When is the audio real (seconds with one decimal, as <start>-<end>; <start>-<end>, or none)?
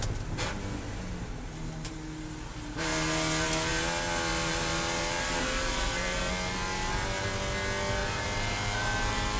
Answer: 0.0-4.3; 6.2-8.0